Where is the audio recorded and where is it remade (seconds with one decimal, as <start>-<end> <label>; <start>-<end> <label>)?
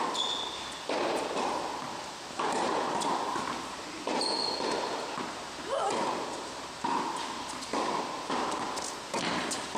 0.0-9.8 recorded